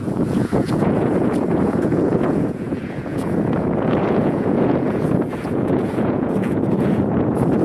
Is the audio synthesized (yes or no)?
yes